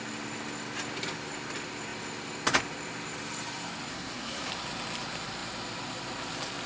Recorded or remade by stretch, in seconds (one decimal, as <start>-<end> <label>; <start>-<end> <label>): 0.0-3.9 recorded; 3.9-4.5 remade; 4.5-6.7 recorded